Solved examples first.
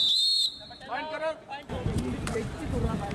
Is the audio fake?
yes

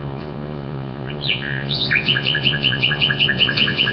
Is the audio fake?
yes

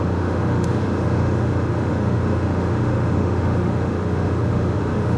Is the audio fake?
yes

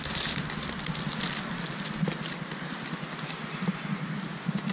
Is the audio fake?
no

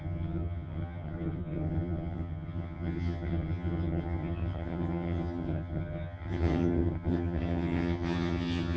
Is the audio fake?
yes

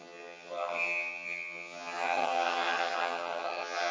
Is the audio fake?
yes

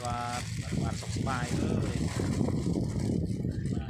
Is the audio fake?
no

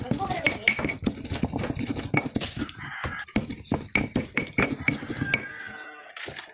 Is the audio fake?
no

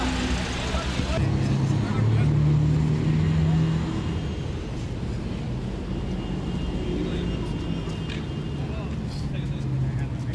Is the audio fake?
no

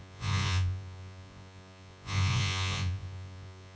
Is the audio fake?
yes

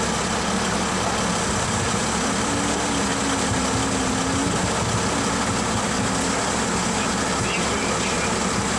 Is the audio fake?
no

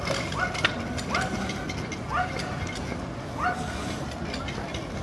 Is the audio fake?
no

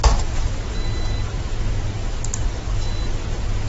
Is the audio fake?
no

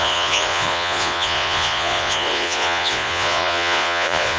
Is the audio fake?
yes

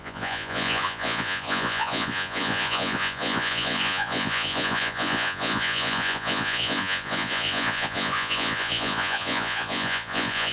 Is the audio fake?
yes